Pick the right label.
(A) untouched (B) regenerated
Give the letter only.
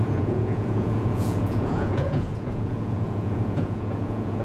B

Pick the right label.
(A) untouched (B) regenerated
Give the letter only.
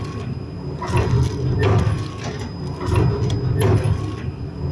A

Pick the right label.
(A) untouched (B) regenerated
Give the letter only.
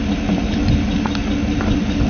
A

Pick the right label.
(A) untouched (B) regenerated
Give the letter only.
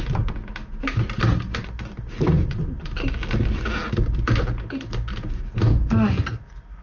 A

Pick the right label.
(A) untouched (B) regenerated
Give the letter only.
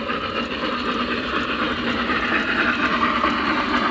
B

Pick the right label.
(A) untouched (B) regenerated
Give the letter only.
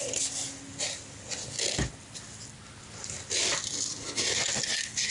A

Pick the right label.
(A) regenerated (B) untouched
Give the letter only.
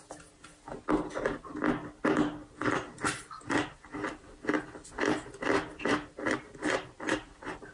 B